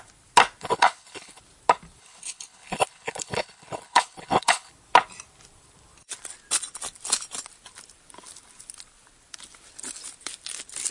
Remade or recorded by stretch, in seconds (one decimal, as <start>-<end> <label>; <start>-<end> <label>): 0.0-0.6 recorded; 0.6-1.4 remade; 1.4-2.0 recorded; 2.0-4.7 remade; 4.7-10.9 recorded